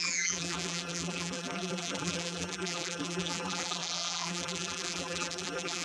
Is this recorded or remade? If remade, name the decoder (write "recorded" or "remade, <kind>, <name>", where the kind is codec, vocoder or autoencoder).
remade, vocoder, BigVGAN v2